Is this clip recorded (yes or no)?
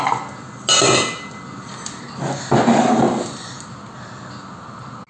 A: yes